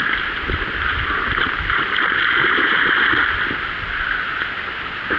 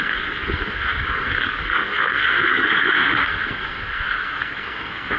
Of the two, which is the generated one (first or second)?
second